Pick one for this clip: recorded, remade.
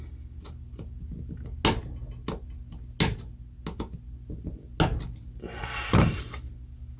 recorded